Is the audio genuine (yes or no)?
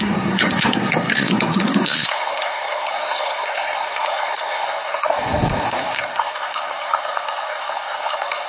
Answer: no